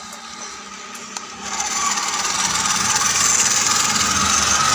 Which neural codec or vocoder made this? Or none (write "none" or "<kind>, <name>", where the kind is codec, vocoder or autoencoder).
none